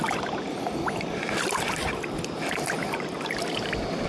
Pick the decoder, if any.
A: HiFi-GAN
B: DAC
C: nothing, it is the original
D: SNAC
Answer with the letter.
C